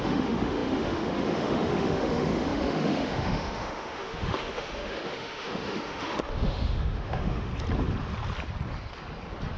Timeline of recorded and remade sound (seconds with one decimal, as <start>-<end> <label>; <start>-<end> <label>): 0.0-7.5 remade; 7.5-9.6 recorded